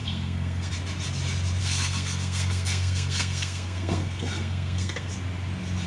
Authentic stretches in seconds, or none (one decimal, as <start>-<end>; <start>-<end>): 0.7-1.6; 5.1-5.9